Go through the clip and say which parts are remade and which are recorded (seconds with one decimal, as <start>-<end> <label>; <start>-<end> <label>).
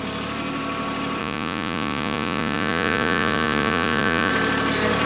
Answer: 0.0-1.2 recorded; 1.2-4.3 remade; 4.3-5.1 recorded